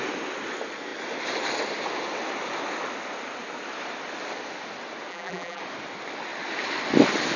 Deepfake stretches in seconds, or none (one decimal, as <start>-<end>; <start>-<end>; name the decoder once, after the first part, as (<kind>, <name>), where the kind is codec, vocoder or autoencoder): 5.1-5.6 (vocoder, BigVGAN v2)